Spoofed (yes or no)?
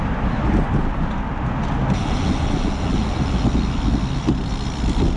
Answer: no